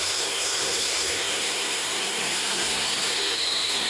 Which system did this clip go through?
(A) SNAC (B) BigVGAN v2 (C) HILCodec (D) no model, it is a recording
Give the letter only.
A